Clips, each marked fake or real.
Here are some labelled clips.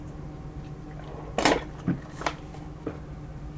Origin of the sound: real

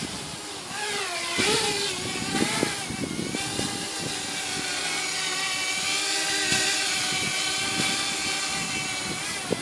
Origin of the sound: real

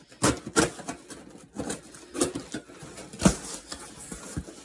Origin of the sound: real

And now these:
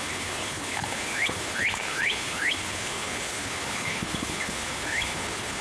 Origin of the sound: fake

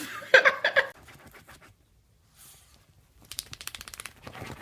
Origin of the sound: fake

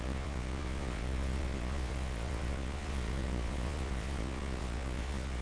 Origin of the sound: fake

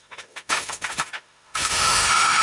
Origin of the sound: fake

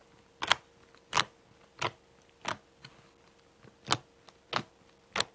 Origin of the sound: real